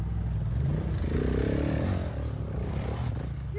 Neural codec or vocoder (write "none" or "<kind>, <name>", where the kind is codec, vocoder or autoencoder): none